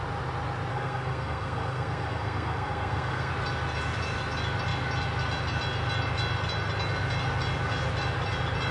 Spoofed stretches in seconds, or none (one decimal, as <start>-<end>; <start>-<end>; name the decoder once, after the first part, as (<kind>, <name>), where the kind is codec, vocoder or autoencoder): 0.7-3.3 (codec, SNAC)